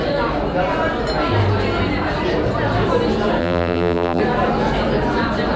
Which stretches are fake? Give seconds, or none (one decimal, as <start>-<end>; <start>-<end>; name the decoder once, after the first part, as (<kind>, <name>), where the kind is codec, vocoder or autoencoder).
3.4-4.2 (vocoder, BigVGAN v2)